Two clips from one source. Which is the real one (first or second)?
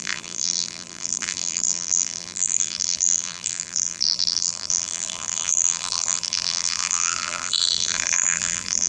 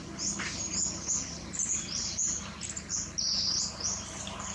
second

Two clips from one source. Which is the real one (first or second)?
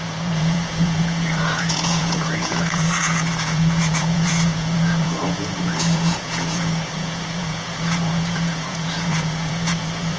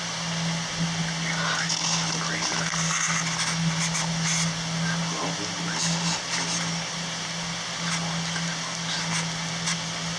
second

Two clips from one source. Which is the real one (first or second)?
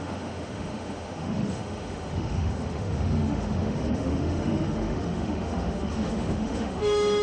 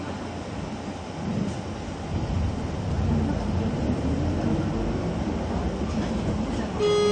second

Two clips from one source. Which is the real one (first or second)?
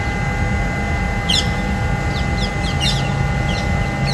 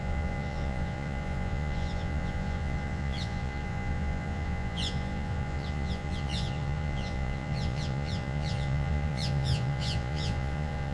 first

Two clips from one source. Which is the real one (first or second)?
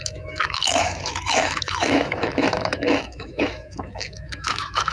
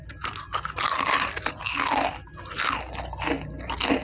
second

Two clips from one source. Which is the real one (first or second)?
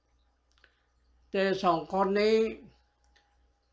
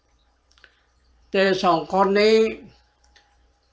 first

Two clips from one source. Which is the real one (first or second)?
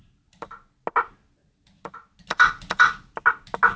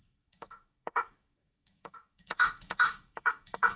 first